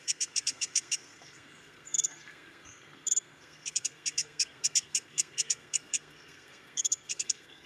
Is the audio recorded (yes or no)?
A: no